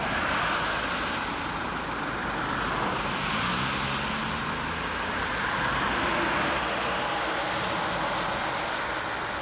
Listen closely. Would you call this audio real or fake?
real